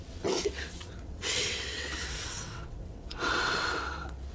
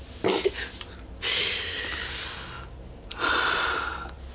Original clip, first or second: second